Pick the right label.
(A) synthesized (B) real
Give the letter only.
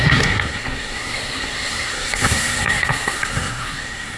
A